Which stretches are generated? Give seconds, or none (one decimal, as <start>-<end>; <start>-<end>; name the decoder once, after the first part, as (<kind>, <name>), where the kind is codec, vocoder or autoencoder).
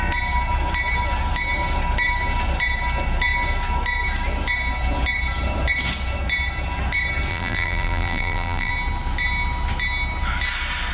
7.3-8.7 (vocoder, BigVGAN v2)